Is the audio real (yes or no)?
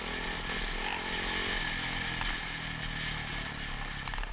yes